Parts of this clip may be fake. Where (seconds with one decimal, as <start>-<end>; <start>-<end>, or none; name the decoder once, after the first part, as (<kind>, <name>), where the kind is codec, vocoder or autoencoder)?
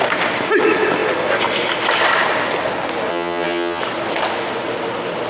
3.1-3.8 (vocoder, HiFi-GAN)